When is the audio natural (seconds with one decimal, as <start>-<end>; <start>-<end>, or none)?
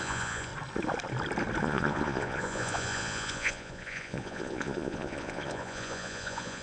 0.5-1.6